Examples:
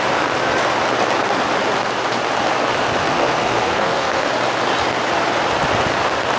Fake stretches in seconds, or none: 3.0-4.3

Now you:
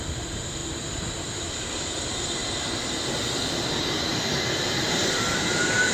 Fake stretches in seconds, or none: 0.0-0.6; 1.5-2.4